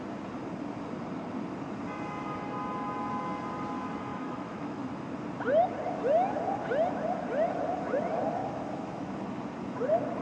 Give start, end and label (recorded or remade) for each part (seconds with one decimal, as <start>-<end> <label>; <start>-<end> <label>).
0.0-4.1 recorded; 4.1-5.1 remade; 5.1-8.4 recorded; 8.4-9.1 remade; 9.1-10.2 recorded